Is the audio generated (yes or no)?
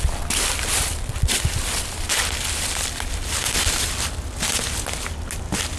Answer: no